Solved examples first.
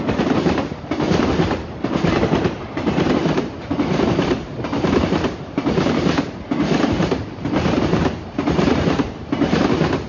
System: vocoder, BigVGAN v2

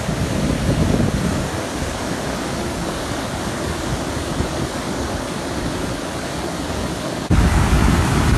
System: codec, DAC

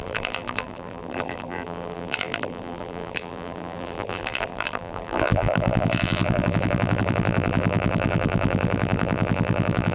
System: vocoder, BigVGAN v2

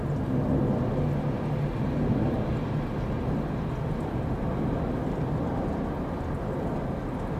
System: none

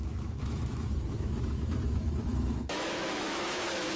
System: autoencoder, DAC-VAE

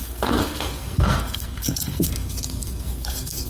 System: codec, SNAC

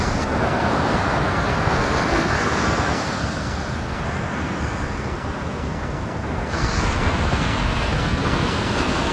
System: codec, SNAC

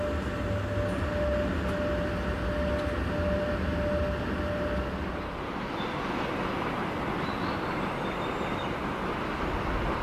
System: none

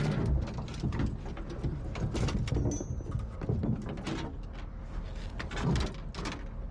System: none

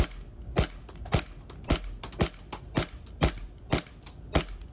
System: none